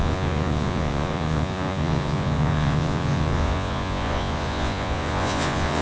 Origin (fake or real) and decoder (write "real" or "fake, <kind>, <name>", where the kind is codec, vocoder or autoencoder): fake, vocoder, Vocos